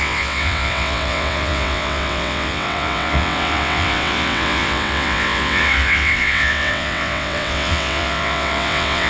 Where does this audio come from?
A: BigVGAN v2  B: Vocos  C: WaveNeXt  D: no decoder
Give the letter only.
C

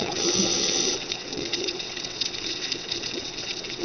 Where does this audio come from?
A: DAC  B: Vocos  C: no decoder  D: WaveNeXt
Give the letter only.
D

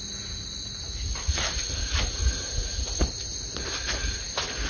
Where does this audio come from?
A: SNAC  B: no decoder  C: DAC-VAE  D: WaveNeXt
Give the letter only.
B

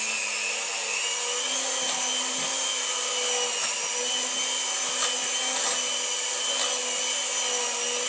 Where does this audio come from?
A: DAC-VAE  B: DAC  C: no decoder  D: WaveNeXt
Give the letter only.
C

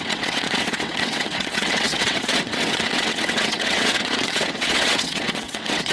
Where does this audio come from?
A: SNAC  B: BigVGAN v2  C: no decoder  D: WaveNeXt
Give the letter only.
D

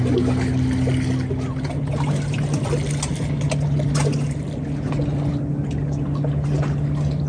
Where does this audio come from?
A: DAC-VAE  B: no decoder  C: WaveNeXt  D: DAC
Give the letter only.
B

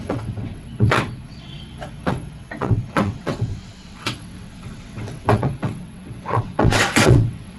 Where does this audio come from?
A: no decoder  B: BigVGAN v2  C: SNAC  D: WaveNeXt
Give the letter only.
D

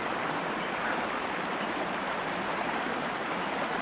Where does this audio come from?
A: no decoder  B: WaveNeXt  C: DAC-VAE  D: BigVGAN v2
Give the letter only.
A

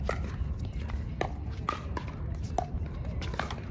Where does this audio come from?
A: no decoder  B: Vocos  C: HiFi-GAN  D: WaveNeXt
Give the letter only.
A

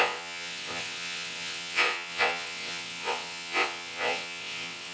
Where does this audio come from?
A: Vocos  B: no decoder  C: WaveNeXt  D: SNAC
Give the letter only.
C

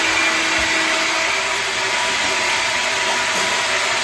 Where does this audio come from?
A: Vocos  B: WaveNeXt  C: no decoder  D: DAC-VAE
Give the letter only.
C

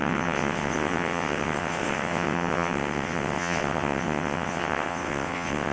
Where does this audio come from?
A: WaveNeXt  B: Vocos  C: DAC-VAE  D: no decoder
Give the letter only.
A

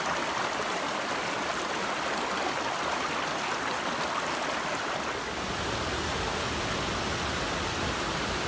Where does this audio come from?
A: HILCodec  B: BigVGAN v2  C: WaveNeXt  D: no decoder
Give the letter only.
D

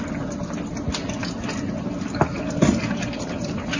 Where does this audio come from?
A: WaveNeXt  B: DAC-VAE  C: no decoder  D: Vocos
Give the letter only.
C